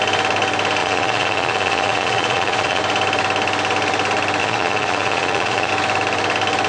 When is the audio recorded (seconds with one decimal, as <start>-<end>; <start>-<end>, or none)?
0.0-0.8; 2.8-4.4; 5.7-6.7